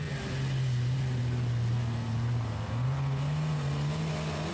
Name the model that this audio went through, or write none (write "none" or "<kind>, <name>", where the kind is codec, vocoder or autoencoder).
none